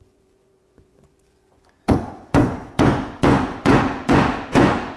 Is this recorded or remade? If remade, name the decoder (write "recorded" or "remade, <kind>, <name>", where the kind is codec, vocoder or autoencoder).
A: remade, vocoder, Vocos